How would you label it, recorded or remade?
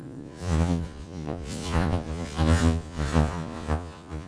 remade